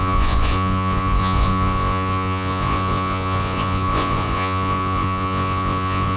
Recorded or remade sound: remade